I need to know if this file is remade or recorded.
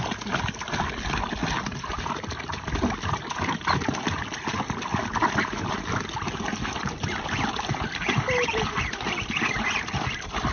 recorded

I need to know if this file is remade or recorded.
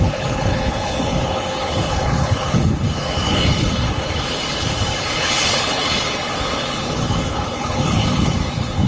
remade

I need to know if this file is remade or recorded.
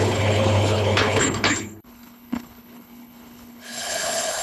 remade